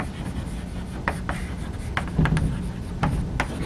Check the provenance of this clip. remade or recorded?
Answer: recorded